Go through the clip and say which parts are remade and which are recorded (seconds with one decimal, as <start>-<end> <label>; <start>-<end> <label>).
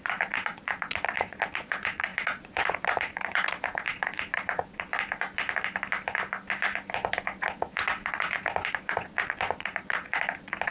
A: 0.0-4.9 remade; 4.9-7.4 recorded; 7.4-10.7 remade